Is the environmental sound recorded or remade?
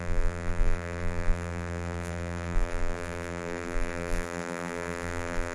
remade